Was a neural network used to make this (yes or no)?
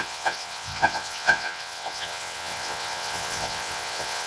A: yes